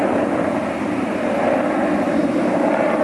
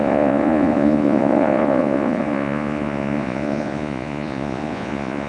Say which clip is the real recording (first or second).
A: first